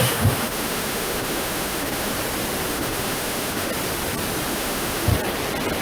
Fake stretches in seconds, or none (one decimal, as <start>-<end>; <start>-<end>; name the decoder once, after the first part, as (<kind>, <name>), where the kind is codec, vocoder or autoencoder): 0.0-2.1 (autoencoder, DAC-VAE); 2.7-3.7; 4.5-5.1